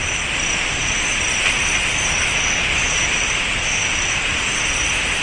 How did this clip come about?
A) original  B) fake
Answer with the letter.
A